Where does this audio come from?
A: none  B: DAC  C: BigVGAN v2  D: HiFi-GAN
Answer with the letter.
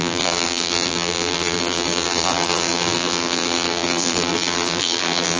C